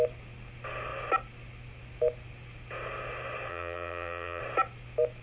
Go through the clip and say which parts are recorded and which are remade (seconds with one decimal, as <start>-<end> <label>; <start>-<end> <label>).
0.0-3.5 recorded; 3.5-4.4 remade; 4.4-5.2 recorded